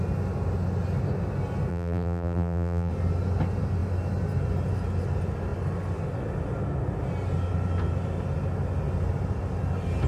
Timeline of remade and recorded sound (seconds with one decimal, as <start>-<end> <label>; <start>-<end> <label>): 0.0-1.7 recorded; 1.7-2.9 remade; 2.9-10.1 recorded

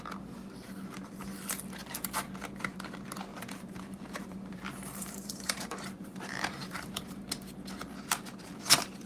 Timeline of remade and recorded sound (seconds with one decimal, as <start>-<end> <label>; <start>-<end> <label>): 0.0-3.3 recorded; 3.3-7.0 remade; 7.0-9.1 recorded

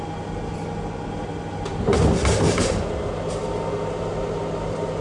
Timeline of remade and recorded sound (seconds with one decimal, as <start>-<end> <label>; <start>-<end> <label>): 0.0-5.0 recorded

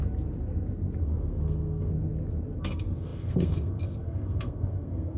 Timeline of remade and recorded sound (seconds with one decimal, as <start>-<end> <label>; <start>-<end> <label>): 0.0-1.0 recorded; 1.0-1.9 remade; 1.9-2.6 recorded; 2.6-5.2 remade

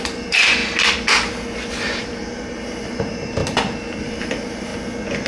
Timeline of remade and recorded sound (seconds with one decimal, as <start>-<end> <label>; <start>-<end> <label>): 0.0-0.6 remade; 0.6-1.7 recorded; 1.7-3.4 remade; 3.4-4.0 recorded; 4.0-4.7 remade; 4.7-5.3 recorded